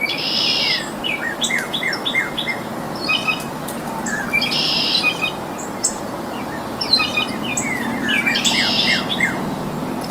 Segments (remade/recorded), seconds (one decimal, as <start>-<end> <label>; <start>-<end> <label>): 0.0-9.1 recorded; 9.1-9.7 remade; 9.7-10.1 recorded